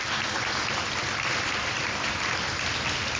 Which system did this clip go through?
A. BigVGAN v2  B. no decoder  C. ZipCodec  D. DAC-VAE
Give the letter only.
A